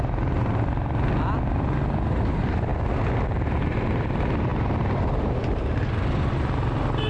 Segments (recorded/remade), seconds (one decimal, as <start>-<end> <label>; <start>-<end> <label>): 0.0-7.1 recorded